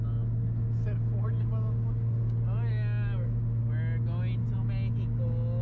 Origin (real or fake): real